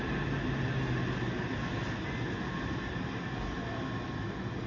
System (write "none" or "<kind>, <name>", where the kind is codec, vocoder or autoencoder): none